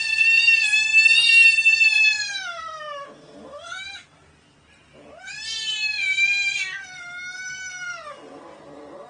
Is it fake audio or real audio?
real